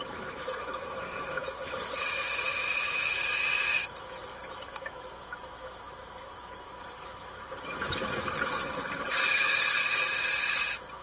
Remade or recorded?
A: remade